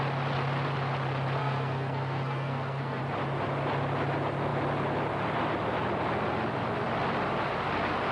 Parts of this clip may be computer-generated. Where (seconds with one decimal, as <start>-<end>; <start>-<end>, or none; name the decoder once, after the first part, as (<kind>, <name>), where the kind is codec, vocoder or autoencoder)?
1.4-3.0 (codec, SNAC)